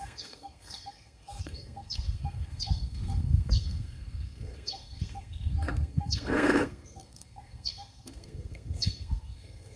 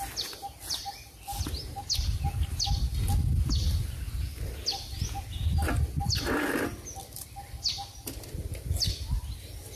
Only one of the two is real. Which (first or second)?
second